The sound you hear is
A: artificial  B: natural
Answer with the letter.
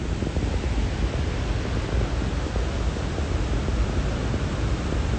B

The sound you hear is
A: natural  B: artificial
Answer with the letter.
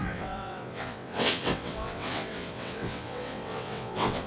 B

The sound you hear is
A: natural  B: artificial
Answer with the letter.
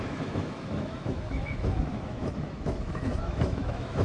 B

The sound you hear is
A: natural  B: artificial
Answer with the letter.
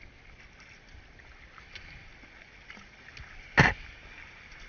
A